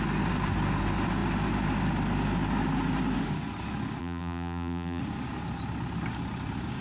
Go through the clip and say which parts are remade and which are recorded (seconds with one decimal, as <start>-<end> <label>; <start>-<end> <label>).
0.0-4.0 recorded; 4.0-5.0 remade; 5.0-6.8 recorded